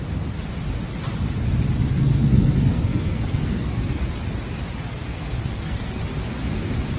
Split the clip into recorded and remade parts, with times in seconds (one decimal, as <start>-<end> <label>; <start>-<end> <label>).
0.0-1.9 recorded; 1.9-4.0 remade; 4.0-5.1 recorded; 5.1-6.0 remade; 6.0-7.0 recorded